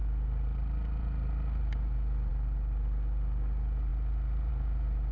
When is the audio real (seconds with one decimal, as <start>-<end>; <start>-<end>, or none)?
0.0-5.1

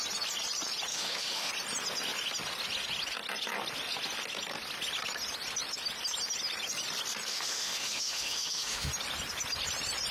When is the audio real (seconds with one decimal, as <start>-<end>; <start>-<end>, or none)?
0.0-0.9; 1.5-7.3; 8.9-10.1